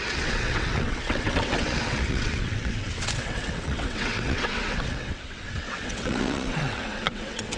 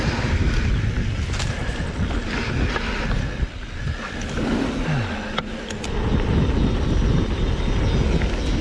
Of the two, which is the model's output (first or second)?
first